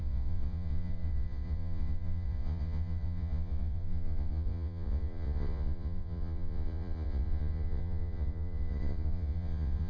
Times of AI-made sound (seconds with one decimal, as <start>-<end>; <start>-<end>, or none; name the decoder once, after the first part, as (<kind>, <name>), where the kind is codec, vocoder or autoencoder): 0.0-9.9 (vocoder, Vocos)